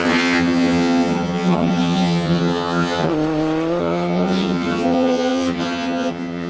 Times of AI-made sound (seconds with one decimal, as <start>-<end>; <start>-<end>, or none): 0.0-3.1; 3.8-6.5